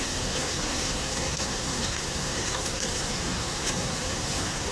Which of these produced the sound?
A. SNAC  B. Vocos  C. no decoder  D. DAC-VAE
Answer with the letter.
A